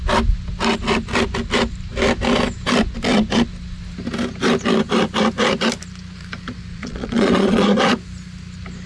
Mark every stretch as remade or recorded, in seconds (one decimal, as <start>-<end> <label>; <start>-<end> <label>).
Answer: 0.0-6.7 recorded; 6.7-7.8 remade; 7.8-8.9 recorded